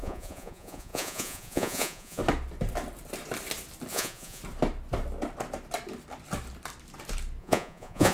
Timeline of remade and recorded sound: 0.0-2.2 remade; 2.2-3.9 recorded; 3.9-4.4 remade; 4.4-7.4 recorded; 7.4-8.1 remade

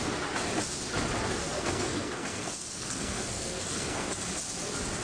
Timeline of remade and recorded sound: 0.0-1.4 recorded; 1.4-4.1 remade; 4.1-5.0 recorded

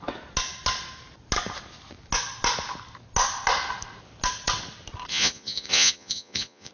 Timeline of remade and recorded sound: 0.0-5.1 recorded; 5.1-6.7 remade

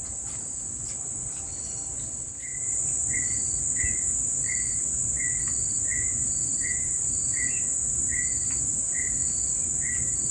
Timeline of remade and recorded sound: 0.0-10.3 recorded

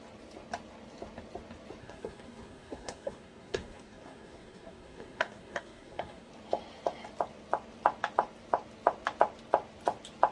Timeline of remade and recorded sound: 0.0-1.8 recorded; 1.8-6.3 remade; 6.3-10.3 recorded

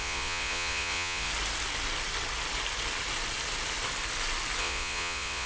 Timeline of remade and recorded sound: 0.0-1.3 remade; 1.3-4.6 recorded; 4.6-5.5 remade